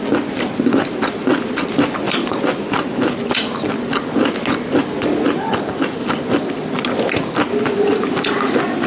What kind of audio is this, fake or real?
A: real